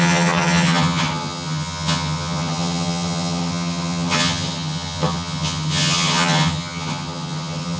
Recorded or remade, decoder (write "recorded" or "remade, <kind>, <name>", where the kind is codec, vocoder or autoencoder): remade, vocoder, HiFi-GAN